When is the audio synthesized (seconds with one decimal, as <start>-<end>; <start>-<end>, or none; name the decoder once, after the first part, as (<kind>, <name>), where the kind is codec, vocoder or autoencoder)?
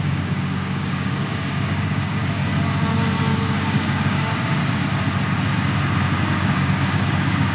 0.0-2.4 (codec, DAC); 3.3-4.6; 6.0-7.5